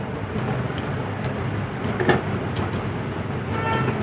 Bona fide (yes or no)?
yes